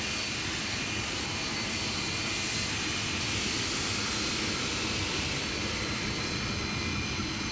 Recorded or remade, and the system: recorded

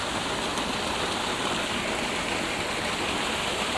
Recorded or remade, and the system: recorded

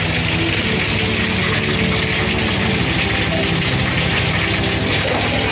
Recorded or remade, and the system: recorded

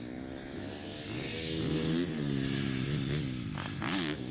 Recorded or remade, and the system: recorded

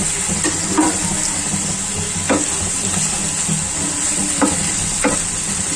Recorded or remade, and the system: recorded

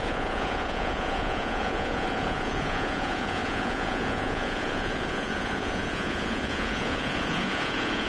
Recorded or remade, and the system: remade, vocoder, Vocos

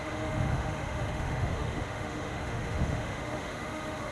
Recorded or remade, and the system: remade, autoencoder, DAC-VAE